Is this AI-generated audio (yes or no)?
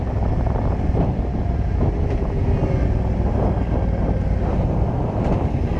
no